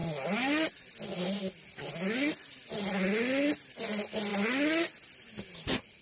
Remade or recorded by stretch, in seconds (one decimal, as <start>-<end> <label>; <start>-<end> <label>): 0.0-6.0 recorded